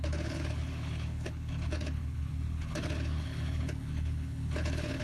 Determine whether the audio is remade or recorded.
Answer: remade